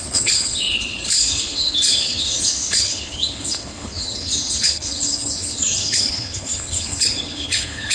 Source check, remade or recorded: remade